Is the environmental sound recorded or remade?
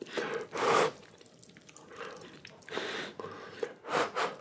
recorded